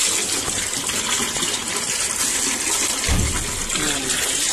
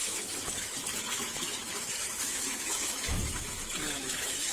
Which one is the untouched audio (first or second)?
first